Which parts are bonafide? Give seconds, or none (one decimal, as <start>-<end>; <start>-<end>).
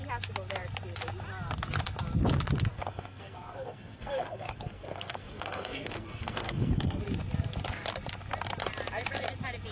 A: 0.0-2.7; 7.0-9.7